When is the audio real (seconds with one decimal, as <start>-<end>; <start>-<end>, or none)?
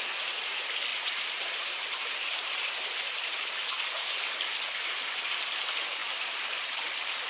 0.0-0.9; 4.3-7.3